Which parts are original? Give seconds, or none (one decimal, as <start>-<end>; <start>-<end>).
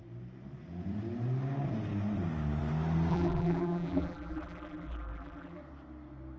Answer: 0.0-3.1; 5.6-6.4